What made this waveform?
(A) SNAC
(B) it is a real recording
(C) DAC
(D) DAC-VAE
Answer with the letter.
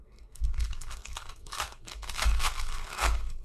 A